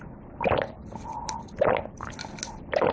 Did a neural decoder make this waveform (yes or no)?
no